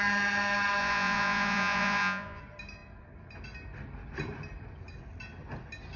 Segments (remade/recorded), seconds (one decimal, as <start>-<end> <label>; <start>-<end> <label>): 0.0-0.8 recorded; 0.8-2.4 remade; 2.4-6.0 recorded